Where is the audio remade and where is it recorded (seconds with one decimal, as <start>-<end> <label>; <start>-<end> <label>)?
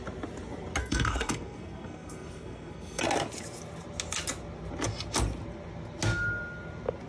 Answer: 0.0-0.8 recorded; 0.8-3.0 remade; 3.0-7.1 recorded